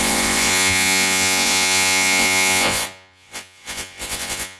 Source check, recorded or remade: remade